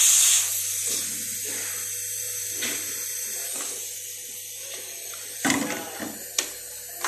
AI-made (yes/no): no